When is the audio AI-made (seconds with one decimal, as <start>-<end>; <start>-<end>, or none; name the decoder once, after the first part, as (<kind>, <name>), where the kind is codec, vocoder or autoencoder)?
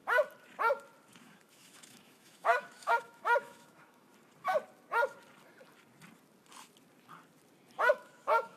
1.2-4.1 (autoencoder, DAC-VAE); 7.9-8.6